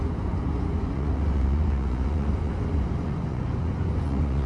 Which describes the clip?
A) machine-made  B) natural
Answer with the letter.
A